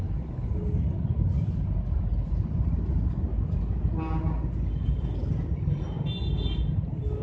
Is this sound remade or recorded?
recorded